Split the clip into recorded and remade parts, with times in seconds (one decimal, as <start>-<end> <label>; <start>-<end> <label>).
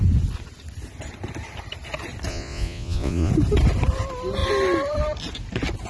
0.0-2.3 recorded; 2.3-3.3 remade; 3.3-5.9 recorded